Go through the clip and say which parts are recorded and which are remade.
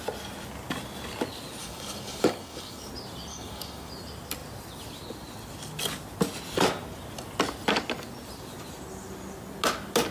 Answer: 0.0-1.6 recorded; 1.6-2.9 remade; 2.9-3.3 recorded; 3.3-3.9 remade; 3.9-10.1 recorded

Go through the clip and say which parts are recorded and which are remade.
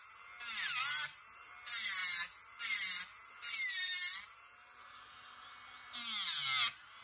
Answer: 0.0-7.0 recorded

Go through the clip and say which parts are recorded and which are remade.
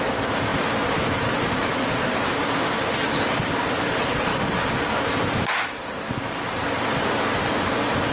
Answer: 0.0-4.3 recorded; 4.3-4.9 remade; 4.9-8.1 recorded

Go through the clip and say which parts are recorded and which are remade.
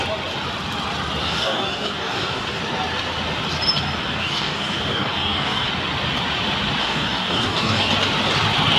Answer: 0.0-1.2 recorded; 1.2-2.6 remade; 2.6-4.2 recorded; 4.2-5.7 remade; 5.7-6.8 recorded; 6.8-7.9 remade; 7.9-8.8 recorded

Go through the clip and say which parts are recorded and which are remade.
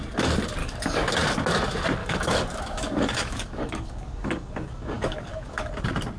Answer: 0.0-0.6 recorded; 0.6-1.1 remade; 1.1-2.0 recorded; 2.0-5.7 remade; 5.7-6.2 recorded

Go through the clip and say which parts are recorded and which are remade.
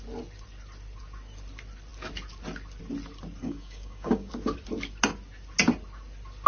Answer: 0.0-3.4 recorded; 3.4-4.3 remade; 4.3-6.5 recorded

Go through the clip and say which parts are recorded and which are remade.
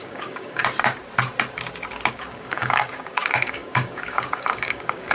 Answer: 0.0-0.6 remade; 0.6-2.1 recorded; 2.1-5.1 remade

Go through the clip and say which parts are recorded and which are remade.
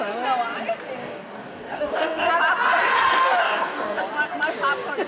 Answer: 0.0-1.0 recorded; 1.0-2.3 remade; 2.3-3.1 recorded; 3.1-4.0 remade; 4.0-5.1 recorded